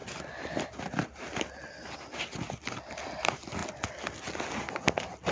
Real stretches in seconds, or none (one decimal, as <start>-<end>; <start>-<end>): 0.0-5.3